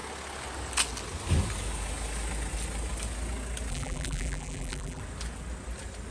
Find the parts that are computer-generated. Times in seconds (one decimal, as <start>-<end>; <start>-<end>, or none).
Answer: 3.7-5.0